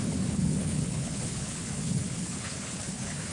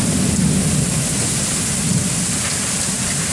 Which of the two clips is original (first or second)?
second